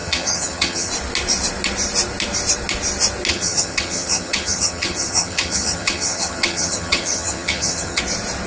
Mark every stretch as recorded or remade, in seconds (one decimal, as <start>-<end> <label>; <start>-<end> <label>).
0.0-0.9 remade; 0.9-3.3 recorded; 3.3-8.0 remade; 8.0-8.5 recorded